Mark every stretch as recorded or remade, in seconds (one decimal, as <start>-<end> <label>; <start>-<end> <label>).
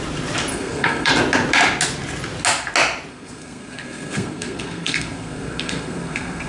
0.0-0.5 recorded; 0.5-1.1 remade; 1.1-3.1 recorded; 3.1-6.5 remade